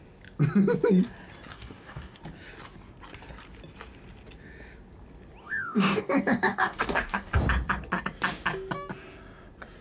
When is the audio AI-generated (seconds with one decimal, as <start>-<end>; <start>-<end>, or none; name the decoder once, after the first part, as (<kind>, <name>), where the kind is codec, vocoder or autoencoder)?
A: 1.5-2.2 (codec, DAC); 5.4-7.4